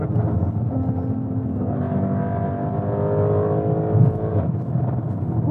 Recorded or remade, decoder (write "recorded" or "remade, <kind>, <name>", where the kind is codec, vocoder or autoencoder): recorded